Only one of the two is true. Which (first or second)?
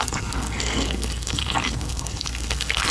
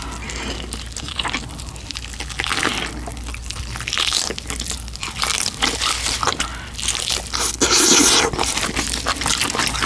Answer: second